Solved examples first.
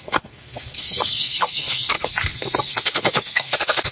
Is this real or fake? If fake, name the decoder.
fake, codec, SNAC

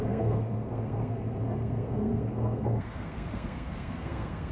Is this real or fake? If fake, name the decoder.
fake, codec, SNAC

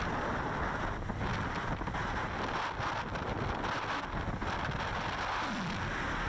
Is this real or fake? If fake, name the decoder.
real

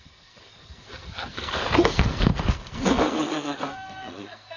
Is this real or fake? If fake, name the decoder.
fake, codec, SNAC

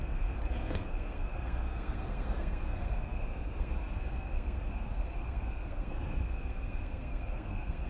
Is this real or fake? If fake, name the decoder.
fake, codec, SNAC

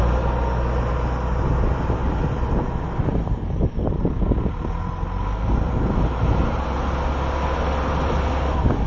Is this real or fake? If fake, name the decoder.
real